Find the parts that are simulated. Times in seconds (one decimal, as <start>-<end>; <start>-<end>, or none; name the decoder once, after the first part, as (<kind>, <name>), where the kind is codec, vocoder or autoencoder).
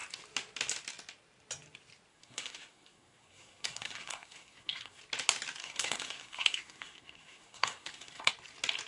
2.1-5.0 (codec, SNAC); 5.6-8.3